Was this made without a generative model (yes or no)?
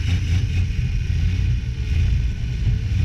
yes